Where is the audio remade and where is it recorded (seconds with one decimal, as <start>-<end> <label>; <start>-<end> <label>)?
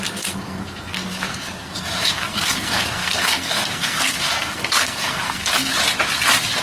0.0-5.7 remade; 5.7-6.6 recorded